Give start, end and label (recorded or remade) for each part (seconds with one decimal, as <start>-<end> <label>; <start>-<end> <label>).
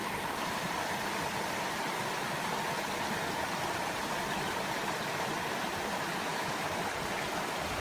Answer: 0.0-6.3 recorded; 6.3-6.8 remade; 6.8-7.8 recorded